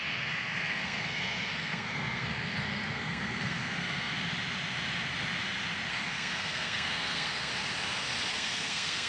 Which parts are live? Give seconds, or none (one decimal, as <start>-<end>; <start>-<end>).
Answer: 4.1-5.9; 7.5-8.3